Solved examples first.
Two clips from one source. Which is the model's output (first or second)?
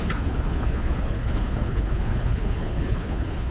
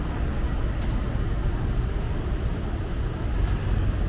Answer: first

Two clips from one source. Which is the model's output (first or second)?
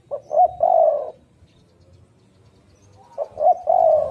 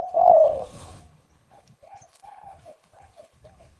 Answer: second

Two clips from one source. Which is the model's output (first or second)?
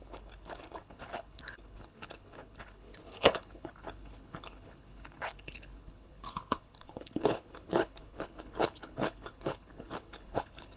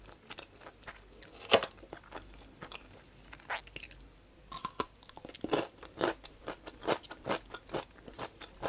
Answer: first